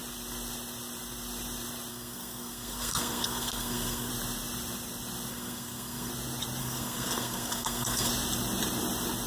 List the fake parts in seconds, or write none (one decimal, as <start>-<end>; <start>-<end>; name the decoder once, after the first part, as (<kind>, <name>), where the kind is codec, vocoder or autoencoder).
1.9-4.1 (codec, SNAC); 5.3-6.1; 6.6-8.1